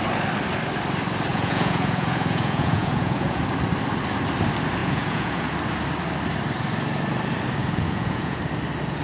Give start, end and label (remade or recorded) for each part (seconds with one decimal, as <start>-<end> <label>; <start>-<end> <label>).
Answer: 0.0-1.3 recorded; 1.3-3.4 remade; 3.4-4.8 recorded; 4.8-5.5 remade; 5.5-7.6 recorded; 7.6-8.4 remade; 8.4-9.0 recorded